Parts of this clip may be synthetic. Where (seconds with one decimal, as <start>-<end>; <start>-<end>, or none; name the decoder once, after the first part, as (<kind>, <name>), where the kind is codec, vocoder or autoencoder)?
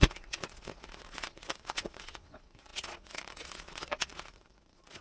0.0-5.0 (vocoder, Vocos)